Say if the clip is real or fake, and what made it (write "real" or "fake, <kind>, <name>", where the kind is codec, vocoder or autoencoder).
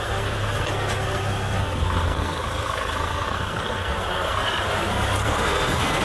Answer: fake, codec, SNAC